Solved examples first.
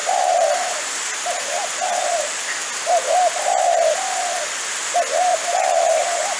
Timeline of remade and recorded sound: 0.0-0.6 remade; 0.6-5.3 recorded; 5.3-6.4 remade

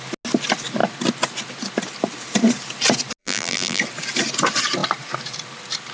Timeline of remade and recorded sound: 0.0-3.2 recorded; 3.2-3.8 remade; 3.8-5.9 recorded

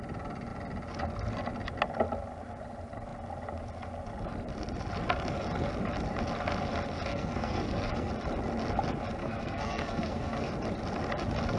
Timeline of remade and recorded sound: 0.0-7.1 recorded; 7.1-8.1 remade; 8.1-9.2 recorded; 9.2-10.5 remade; 10.5-11.6 recorded

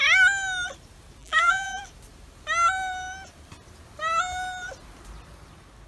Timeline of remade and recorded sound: 0.0-1.2 recorded; 1.2-1.8 remade; 1.8-5.9 recorded

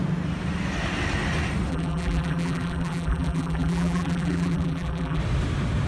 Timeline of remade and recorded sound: 0.0-1.7 recorded; 1.7-5.2 remade; 5.2-5.9 recorded

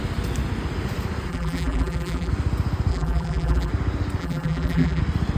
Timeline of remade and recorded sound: 0.0-1.3 recorded; 1.3-2.3 remade; 2.3-2.9 recorded; 2.9-3.7 remade; 3.7-4.2 recorded; 4.2-5.0 remade; 5.0-5.4 recorded

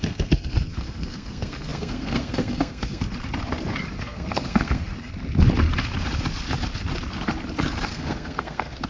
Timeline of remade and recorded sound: 0.0-3.0 remade; 3.0-4.0 recorded; 4.0-4.9 remade; 4.9-7.9 recorded; 7.9-8.9 remade